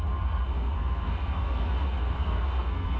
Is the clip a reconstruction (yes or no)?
yes